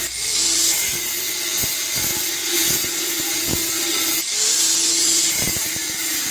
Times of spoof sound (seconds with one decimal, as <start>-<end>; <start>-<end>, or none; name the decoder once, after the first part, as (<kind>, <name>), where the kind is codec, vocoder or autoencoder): 2.4-3.9 (vocoder, Vocos); 5.0-5.6